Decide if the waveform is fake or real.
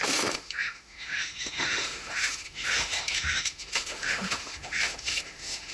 fake